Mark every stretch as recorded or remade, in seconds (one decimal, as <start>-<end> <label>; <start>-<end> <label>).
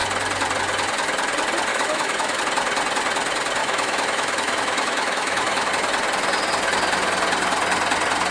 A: 0.0-1.7 recorded; 1.7-2.4 remade; 2.4-3.6 recorded; 3.6-5.7 remade; 5.7-8.3 recorded